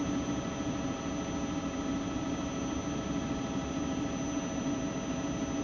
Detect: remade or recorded recorded